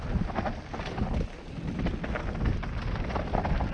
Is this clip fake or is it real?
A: real